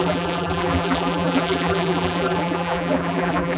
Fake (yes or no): yes